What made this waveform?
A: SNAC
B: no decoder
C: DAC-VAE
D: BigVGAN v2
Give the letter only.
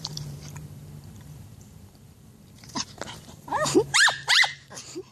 D